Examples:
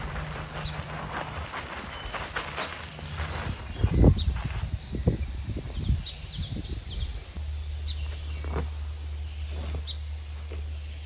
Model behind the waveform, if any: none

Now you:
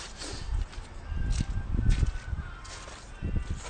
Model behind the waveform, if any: none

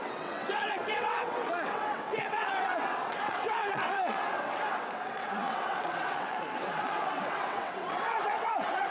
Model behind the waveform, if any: vocoder, WaveNeXt